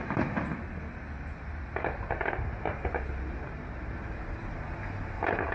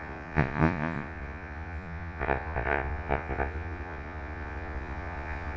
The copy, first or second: second